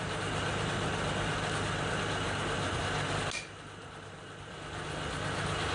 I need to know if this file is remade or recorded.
recorded